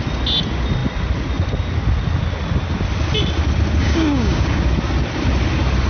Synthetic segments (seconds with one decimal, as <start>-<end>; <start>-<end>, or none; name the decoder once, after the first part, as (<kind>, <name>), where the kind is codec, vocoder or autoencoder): 3.8-4.6 (codec, DAC)